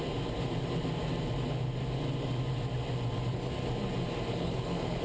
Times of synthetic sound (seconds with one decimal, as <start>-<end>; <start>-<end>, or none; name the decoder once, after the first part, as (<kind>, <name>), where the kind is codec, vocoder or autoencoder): 4.3-5.0 (codec, HILCodec)

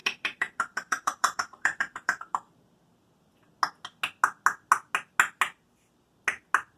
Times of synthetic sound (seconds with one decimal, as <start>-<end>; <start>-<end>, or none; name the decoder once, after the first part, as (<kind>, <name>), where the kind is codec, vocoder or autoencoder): 0.0-2.6 (vocoder, BigVGAN v2)